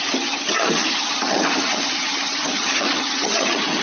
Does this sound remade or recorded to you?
remade